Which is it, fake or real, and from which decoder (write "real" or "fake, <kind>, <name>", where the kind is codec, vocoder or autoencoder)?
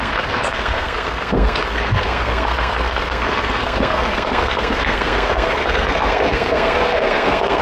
fake, codec, SNAC